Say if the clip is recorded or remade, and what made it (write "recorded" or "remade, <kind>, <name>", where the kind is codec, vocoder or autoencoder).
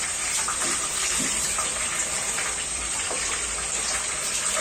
remade, vocoder, BigVGAN v2